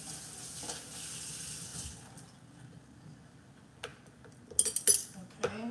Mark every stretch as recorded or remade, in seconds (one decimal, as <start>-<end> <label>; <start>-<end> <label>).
0.0-5.7 recorded